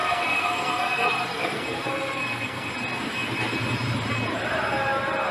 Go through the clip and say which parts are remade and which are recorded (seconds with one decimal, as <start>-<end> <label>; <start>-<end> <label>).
0.0-2.7 remade; 2.7-5.3 recorded